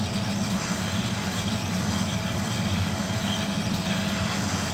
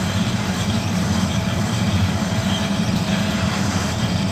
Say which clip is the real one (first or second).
first